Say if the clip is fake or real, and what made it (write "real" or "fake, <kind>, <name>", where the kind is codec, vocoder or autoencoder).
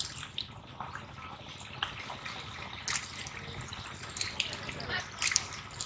real